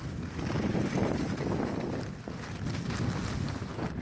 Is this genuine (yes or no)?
yes